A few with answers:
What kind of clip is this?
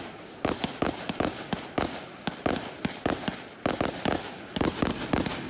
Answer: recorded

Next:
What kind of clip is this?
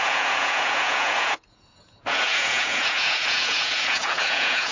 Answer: remade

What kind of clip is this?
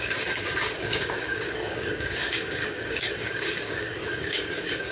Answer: remade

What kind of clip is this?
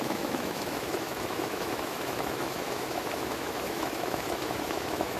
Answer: remade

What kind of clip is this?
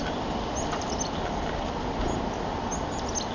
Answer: recorded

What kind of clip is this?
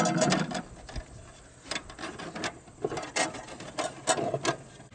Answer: recorded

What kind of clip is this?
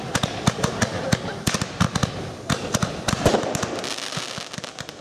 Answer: recorded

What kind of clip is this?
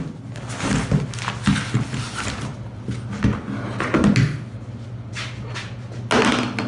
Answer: recorded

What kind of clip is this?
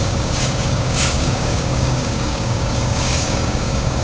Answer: remade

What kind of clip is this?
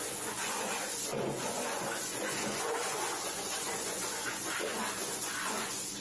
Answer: remade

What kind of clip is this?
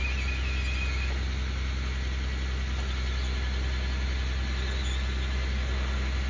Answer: recorded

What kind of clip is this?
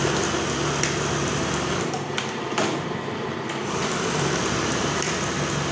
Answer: remade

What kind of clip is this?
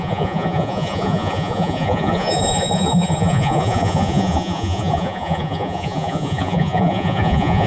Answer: remade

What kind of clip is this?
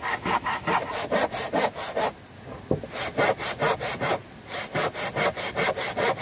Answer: recorded